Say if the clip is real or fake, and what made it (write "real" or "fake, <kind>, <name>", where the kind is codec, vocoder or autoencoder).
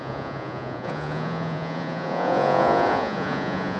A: fake, vocoder, Vocos